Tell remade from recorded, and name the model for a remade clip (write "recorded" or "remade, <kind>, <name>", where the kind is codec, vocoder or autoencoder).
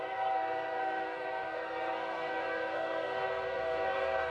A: remade, codec, SNAC